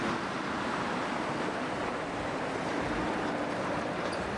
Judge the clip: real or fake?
fake